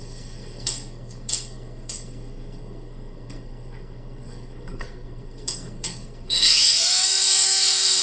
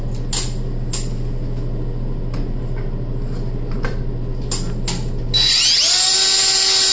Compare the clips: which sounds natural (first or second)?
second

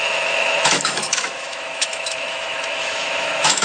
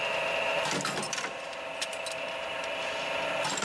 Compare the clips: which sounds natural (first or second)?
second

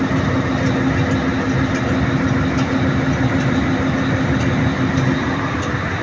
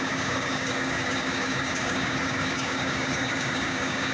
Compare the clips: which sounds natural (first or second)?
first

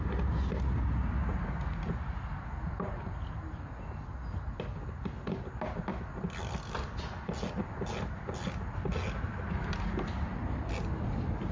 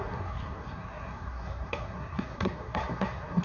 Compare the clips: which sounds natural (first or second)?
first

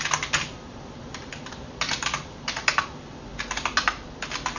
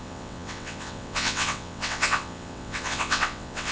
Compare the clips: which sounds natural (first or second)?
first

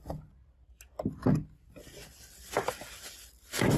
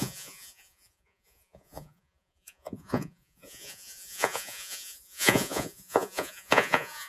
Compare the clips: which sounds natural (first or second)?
first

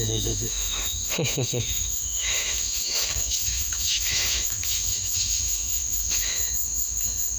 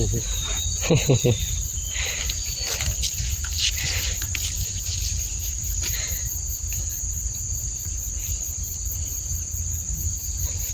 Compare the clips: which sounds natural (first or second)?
second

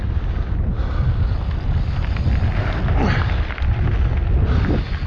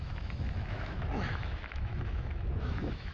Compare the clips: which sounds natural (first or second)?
first